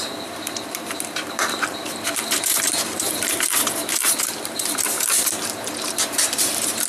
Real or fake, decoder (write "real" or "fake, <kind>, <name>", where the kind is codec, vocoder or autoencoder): fake, vocoder, BigVGAN v2